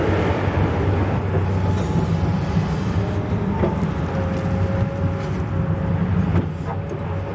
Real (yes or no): yes